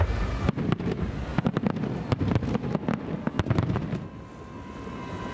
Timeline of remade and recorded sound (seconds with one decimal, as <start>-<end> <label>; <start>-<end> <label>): 0.0-5.3 recorded